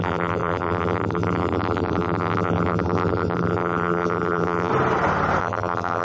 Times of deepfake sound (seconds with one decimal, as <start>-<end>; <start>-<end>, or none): 0.0-4.7; 5.4-6.0